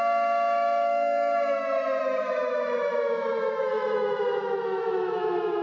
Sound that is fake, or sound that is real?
fake